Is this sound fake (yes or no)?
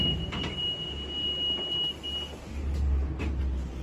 no